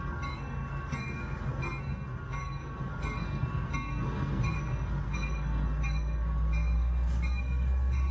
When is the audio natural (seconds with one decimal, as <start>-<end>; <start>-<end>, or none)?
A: none

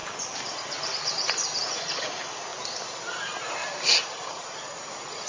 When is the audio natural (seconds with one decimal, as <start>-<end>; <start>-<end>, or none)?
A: 0.0-1.6; 2.5-3.2; 3.6-4.3

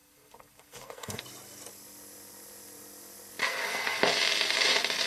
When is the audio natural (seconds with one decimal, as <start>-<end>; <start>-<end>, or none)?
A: 1.2-3.4; 4.0-5.1

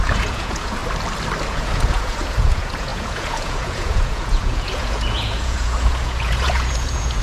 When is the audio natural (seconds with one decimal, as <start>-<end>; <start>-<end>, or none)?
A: 0.8-1.5

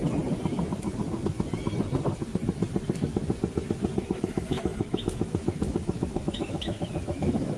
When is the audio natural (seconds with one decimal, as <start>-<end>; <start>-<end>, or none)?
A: 0.0-4.0